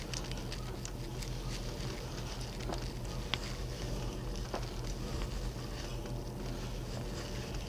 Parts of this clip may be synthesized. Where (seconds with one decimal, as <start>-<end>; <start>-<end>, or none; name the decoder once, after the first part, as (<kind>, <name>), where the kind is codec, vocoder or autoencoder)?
none